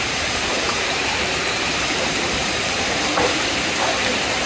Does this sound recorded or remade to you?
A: remade